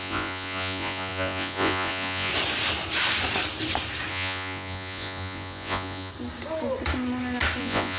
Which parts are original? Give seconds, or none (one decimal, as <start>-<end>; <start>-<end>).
2.3-4.1; 6.1-7.6